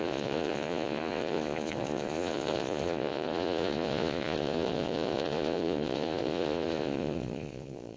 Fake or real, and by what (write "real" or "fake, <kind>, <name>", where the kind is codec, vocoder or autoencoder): fake, vocoder, Vocos